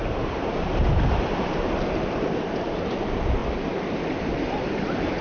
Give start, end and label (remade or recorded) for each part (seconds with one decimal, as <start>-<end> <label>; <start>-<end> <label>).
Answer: 0.0-3.4 remade; 3.4-4.2 recorded; 4.2-5.2 remade